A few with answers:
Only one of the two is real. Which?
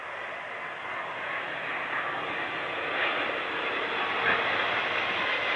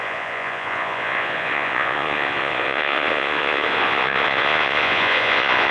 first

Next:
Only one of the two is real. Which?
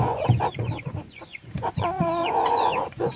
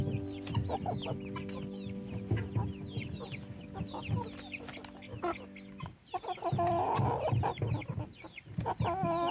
second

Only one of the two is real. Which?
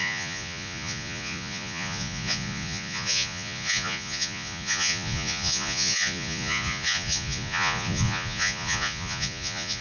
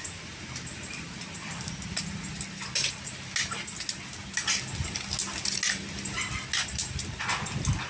second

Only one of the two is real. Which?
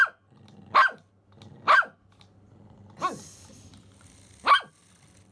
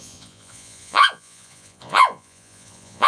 first